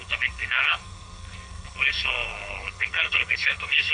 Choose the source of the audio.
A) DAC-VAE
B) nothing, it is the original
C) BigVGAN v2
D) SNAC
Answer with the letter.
D